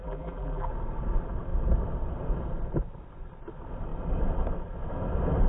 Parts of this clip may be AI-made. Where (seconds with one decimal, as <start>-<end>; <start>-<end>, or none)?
0.0-0.7